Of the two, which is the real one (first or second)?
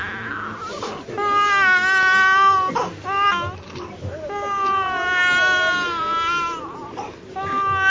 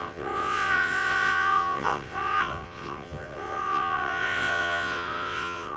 first